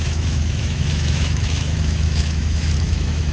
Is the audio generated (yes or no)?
yes